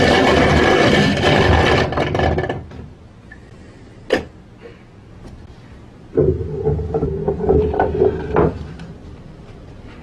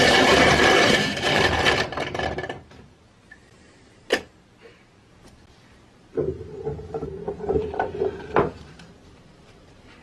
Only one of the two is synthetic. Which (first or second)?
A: second